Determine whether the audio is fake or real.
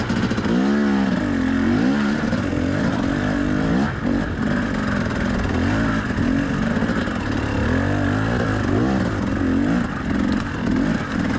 real